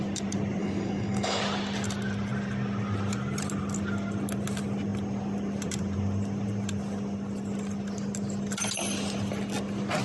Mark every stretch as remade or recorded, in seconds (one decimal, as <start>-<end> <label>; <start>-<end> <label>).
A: 0.0-0.6 recorded; 0.6-1.4 remade; 1.4-10.0 recorded